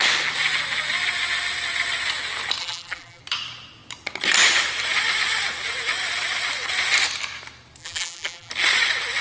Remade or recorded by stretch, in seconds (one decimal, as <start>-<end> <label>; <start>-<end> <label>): 0.0-2.6 recorded; 2.6-3.2 remade; 3.2-7.8 recorded; 7.8-8.5 remade; 8.5-9.2 recorded